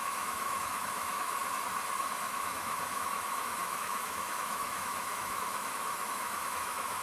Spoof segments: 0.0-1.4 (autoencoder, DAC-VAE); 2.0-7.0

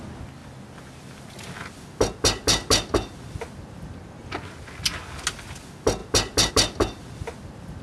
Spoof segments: none

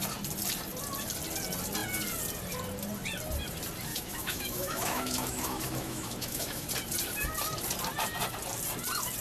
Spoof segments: 3.9-6.7 (autoencoder, DAC-VAE)

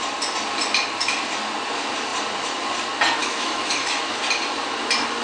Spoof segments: 3.2-4.2 (autoencoder, DAC-VAE)

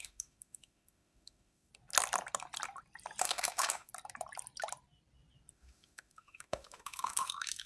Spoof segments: 0.0-1.7 (autoencoder, DAC-VAE); 3.2-3.9; 5.5-7.7

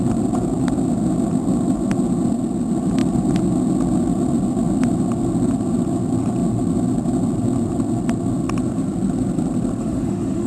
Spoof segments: 9.8-10.5 (autoencoder, DAC-VAE)

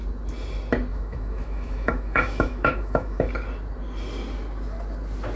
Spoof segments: 0.9-3.3 (autoencoder, DAC-VAE)